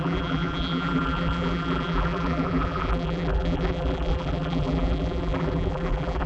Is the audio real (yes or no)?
no